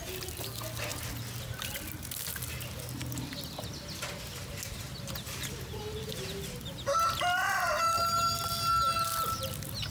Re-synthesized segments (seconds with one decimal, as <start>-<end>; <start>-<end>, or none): none